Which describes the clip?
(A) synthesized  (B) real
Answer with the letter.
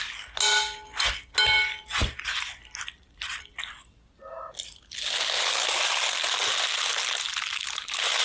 B